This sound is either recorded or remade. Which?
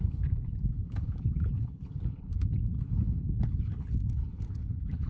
remade